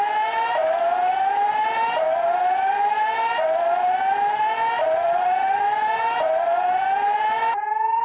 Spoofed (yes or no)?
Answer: no